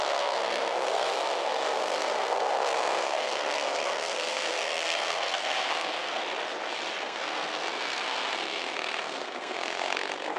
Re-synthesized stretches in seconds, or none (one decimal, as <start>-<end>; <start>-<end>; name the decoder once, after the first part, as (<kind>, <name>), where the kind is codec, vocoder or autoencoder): 0.0-6.2 (codec, SNAC); 7.0-10.4